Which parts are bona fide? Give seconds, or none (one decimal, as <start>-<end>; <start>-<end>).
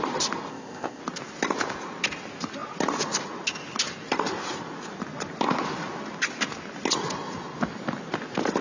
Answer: 0.0-0.5; 1.0-8.6